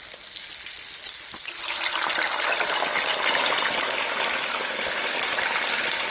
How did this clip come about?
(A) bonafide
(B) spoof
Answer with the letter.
A